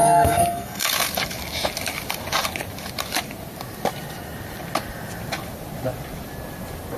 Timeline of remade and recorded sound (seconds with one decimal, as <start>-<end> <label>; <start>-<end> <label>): 0.0-0.9 remade; 0.9-7.0 recorded